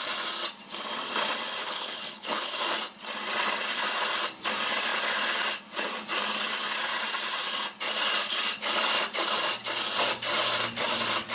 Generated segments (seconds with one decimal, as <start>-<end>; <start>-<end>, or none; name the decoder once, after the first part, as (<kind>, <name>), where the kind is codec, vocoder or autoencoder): 1.6-2.6 (codec, HILCodec)